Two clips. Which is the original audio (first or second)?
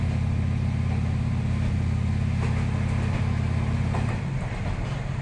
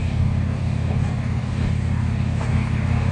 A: first